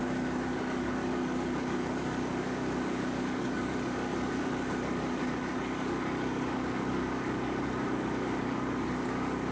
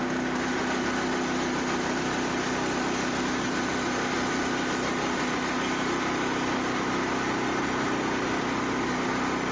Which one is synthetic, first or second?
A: first